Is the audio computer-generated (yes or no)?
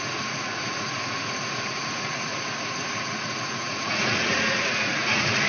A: yes